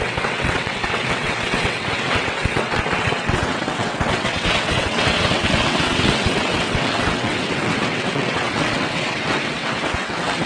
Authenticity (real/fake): fake